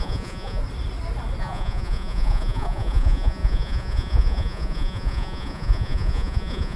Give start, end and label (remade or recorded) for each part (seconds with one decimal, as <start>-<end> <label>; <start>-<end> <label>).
0.0-0.6 remade; 0.6-1.4 recorded; 1.4-6.8 remade